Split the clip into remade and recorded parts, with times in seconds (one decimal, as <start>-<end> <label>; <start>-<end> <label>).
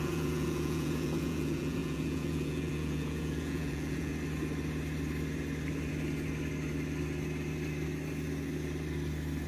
0.0-4.1 remade; 4.1-9.5 recorded